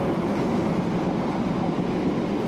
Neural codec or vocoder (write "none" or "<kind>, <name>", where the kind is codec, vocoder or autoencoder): none